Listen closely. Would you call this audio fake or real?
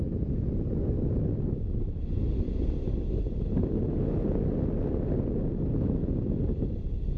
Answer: real